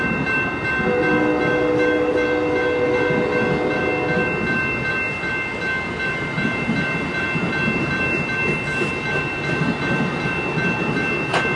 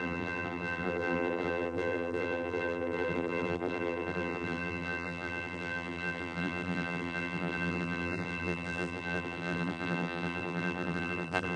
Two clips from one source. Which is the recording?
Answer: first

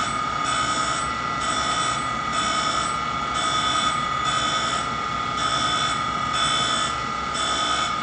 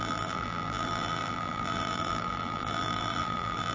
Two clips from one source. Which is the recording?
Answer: first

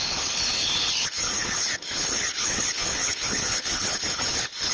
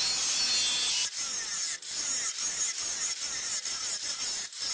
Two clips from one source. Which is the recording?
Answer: second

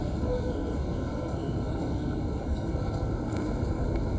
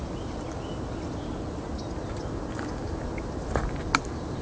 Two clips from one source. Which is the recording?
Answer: second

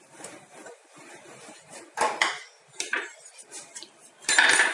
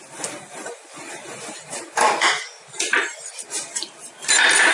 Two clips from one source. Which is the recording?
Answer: second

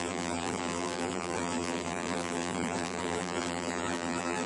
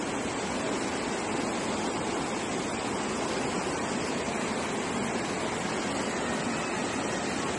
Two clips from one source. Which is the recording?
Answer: second